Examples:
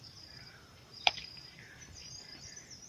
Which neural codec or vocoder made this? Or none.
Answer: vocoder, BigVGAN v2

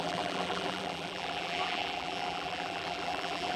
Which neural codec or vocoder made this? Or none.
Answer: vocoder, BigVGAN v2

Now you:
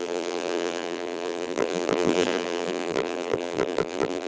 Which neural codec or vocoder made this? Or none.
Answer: vocoder, BigVGAN v2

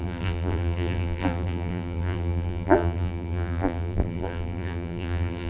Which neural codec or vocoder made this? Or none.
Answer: vocoder, BigVGAN v2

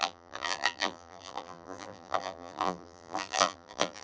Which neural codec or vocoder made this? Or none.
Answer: vocoder, BigVGAN v2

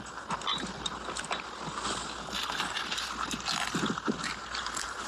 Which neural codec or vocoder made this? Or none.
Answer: none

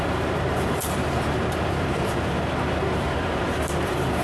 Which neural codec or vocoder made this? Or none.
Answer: vocoder, BigVGAN v2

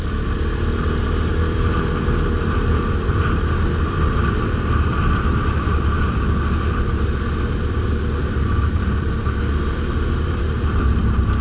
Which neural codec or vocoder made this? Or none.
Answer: vocoder, BigVGAN v2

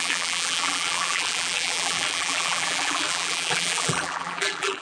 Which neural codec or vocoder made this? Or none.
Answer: vocoder, BigVGAN v2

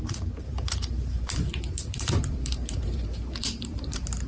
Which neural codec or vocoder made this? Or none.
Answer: vocoder, BigVGAN v2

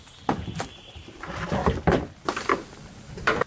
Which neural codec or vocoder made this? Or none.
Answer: vocoder, BigVGAN v2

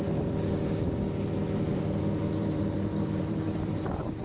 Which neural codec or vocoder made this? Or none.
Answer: vocoder, BigVGAN v2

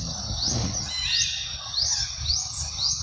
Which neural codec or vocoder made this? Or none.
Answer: none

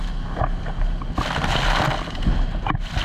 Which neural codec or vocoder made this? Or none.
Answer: none